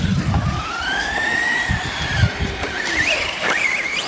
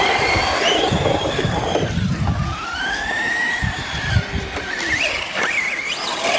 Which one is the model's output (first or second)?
first